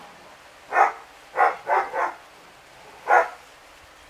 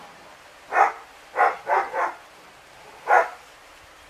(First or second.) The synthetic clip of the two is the second